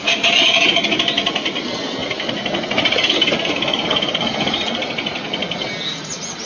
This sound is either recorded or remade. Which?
recorded